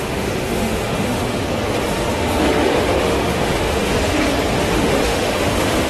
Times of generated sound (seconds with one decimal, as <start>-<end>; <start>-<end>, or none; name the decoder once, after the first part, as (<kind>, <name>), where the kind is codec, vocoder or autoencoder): 0.0-1.4 (autoencoder, DAC-VAE); 2.1-3.9; 4.7-5.9